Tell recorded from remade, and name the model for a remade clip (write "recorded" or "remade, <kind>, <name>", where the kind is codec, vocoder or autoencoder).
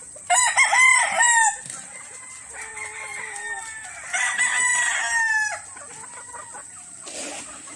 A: recorded